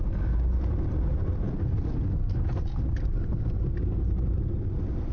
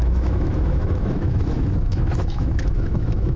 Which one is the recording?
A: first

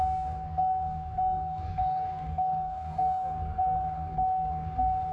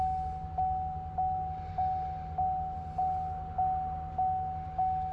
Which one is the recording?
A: second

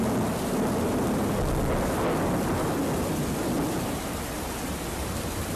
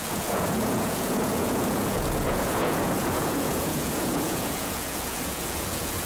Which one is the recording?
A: first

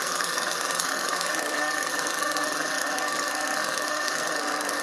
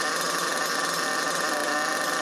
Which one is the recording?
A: second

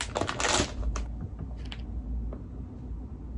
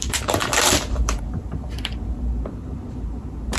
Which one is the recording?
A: first